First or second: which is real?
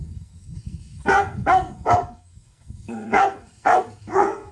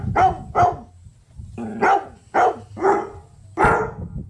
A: second